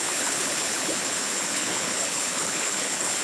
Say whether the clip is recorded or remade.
remade